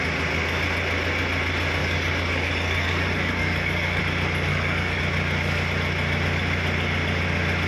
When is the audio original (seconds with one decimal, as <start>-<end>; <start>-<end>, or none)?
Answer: 0.0-1.8; 4.0-4.5; 5.0-7.7